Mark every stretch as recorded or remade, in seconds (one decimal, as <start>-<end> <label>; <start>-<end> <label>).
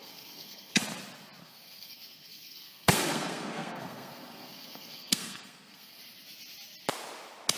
0.0-0.8 remade; 0.8-1.4 recorded; 1.4-6.0 remade; 6.0-7.6 recorded